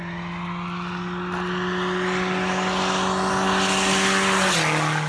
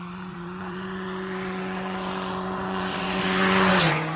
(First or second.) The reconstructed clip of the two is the second